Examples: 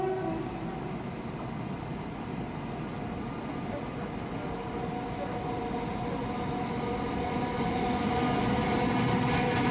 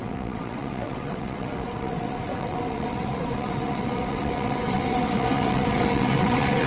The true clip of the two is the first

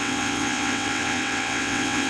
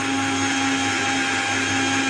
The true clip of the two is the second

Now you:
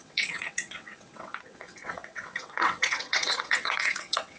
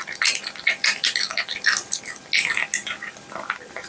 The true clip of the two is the second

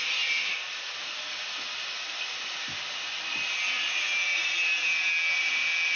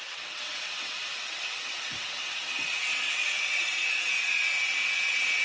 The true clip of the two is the first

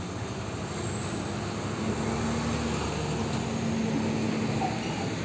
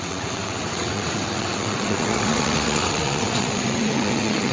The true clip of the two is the first